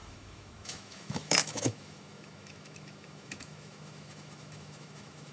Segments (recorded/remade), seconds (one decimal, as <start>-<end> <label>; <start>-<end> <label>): 0.0-5.3 remade